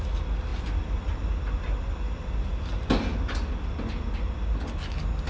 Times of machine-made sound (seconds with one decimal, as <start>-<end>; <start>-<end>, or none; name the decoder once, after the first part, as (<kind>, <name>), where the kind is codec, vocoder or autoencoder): none